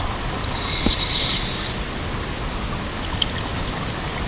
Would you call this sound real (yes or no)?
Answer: yes